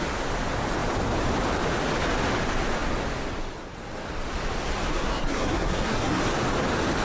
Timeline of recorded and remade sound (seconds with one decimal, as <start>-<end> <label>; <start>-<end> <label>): 0.0-4.9 recorded; 4.9-6.2 remade; 6.2-7.0 recorded